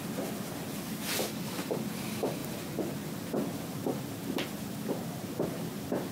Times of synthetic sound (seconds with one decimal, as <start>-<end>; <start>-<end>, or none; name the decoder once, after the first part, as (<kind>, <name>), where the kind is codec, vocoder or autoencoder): none